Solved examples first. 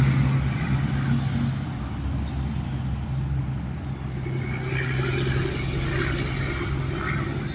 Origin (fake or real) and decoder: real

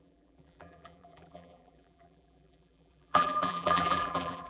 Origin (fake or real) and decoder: fake, vocoder, BigVGAN v2